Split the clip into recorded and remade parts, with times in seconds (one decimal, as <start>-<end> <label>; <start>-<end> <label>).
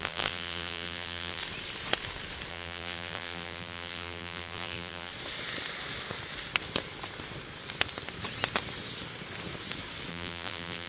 0.0-1.4 remade; 1.4-2.5 recorded; 2.5-5.1 remade; 5.1-10.1 recorded; 10.1-10.9 remade